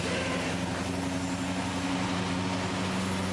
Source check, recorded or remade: recorded